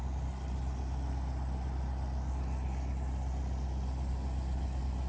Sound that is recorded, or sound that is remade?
recorded